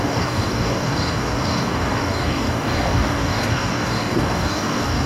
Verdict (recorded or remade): remade